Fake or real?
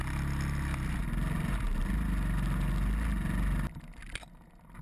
real